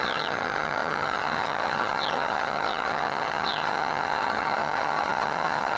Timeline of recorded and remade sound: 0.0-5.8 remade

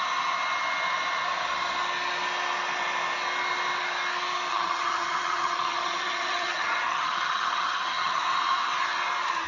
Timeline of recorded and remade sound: 0.0-4.5 recorded; 4.5-8.2 remade; 8.2-9.5 recorded

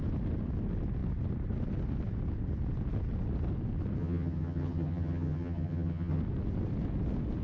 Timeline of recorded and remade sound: 0.0-4.0 recorded; 4.0-6.2 remade; 6.2-7.4 recorded

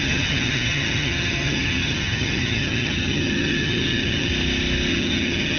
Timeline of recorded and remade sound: 0.0-4.3 remade; 4.3-4.9 recorded; 4.9-5.6 remade